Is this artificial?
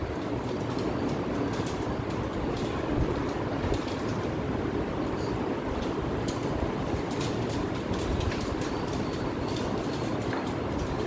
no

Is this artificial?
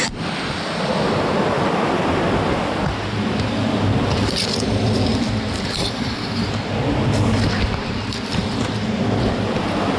no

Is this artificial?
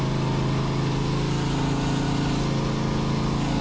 no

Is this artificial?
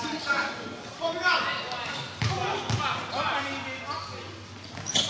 no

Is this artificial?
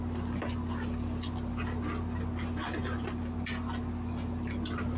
no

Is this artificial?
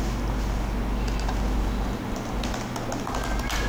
no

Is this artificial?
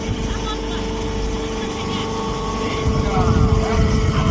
no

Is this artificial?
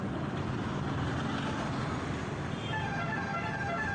no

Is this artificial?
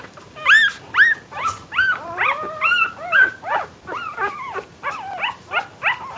yes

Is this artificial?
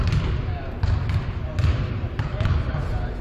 no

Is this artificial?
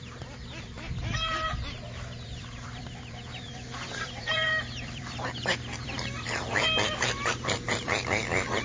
yes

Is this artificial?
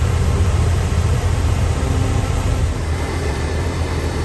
yes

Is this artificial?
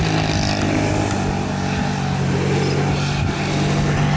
no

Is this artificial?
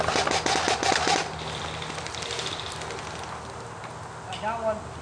yes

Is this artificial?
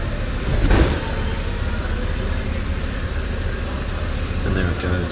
yes